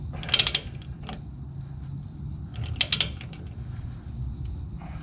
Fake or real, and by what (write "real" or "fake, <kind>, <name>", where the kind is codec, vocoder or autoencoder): real